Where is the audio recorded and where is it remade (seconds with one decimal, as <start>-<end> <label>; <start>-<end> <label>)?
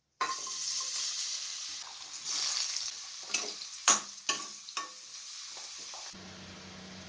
0.0-7.1 recorded